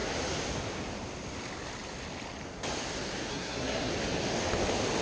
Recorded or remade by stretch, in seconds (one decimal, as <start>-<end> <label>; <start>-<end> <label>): 0.0-3.3 recorded; 3.3-3.9 remade; 3.9-5.0 recorded